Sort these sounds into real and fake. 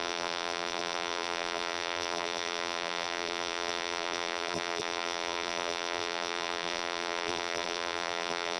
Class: fake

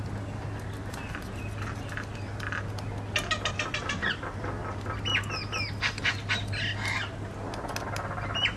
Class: real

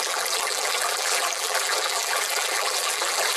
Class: fake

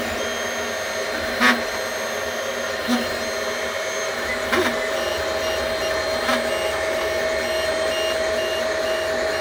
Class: real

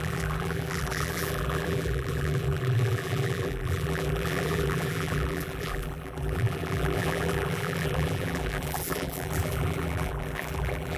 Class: fake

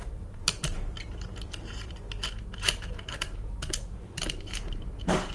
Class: fake